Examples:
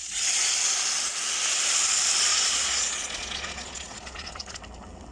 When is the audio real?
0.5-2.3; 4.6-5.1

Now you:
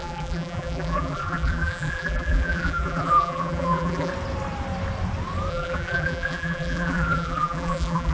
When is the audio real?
4.1-5.5

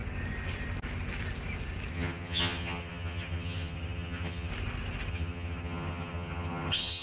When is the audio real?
0.0-1.9; 4.5-5.1